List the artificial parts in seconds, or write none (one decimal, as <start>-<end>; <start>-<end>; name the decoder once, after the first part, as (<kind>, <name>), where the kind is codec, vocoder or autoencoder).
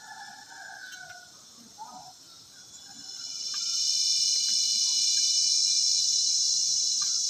none